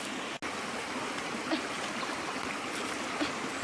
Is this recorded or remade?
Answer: recorded